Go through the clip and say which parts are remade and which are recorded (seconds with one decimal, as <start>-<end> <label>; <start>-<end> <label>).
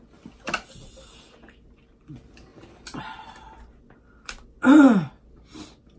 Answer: 0.0-2.5 recorded; 2.5-3.0 remade; 3.0-6.0 recorded